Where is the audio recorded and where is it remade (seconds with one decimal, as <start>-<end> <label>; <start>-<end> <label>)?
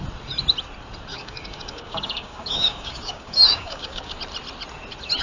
0.0-1.1 recorded; 1.1-4.2 remade; 4.2-5.2 recorded